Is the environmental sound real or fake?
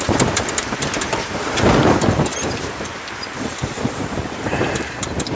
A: fake